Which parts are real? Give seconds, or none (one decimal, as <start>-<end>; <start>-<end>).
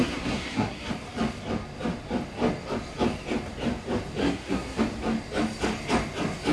0.9-4.2; 4.8-6.5